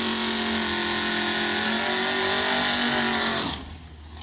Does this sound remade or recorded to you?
recorded